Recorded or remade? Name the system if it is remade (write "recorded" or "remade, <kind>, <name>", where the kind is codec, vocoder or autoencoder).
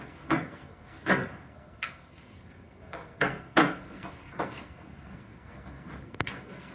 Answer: remade, codec, SNAC